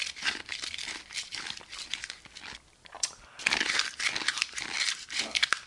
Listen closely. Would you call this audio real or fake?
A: real